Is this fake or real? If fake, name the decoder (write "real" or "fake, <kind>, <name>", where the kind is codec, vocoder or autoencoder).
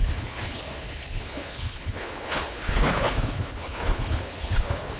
fake, codec, HILCodec